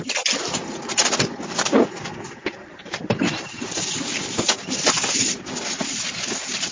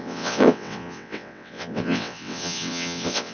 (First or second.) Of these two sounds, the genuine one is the first